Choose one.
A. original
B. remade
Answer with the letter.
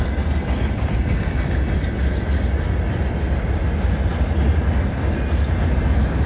A